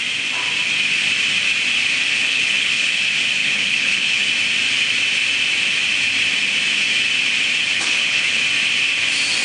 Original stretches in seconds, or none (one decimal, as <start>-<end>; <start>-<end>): 0.0-2.2; 3.0-3.4; 4.3-7.7; 8.4-9.4